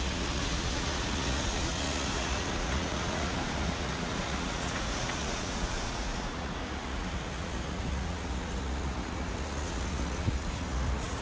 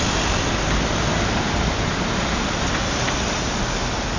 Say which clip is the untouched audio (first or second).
second